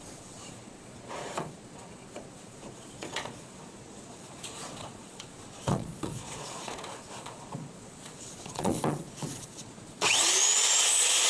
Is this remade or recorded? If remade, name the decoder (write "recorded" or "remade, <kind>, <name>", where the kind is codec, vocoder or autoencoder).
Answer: remade, vocoder, Vocos